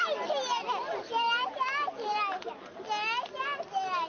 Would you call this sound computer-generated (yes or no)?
no